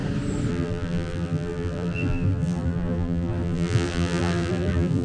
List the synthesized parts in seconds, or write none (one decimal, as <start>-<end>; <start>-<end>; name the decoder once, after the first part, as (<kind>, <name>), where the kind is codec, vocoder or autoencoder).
0.5-5.0 (vocoder, BigVGAN v2)